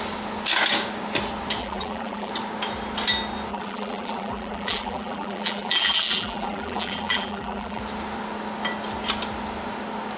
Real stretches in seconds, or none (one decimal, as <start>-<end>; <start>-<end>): 0.0-1.6; 2.3-3.5; 7.8-10.2